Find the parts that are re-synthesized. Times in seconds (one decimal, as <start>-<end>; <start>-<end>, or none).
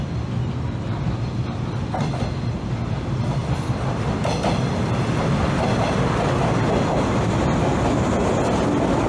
none